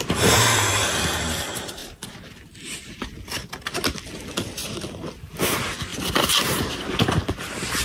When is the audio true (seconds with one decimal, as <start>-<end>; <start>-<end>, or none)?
0.0-1.8; 2.4-5.9; 6.7-7.8